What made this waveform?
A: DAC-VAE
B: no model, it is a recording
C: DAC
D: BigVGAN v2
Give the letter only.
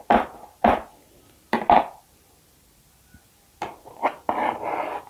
D